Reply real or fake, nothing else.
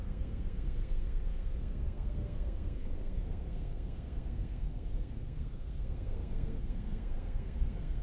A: fake